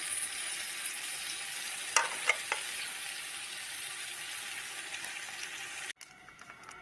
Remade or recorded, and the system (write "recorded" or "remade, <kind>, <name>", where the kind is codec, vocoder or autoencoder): recorded